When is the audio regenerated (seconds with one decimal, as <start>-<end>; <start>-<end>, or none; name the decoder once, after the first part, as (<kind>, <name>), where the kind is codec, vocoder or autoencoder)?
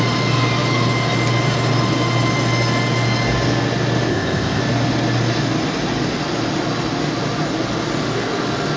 4.1-4.6 (codec, ZipCodec)